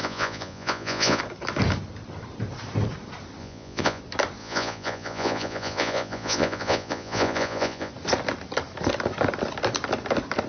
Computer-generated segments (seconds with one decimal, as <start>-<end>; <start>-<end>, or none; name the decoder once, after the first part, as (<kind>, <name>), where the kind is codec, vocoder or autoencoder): 0.0-1.2 (vocoder, Vocos); 3.4-4.0; 4.4-7.9